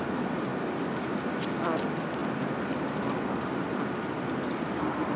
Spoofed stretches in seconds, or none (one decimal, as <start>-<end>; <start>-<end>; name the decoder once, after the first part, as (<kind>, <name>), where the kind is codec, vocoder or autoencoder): 0.5-1.2 (vocoder, BigVGAN v2)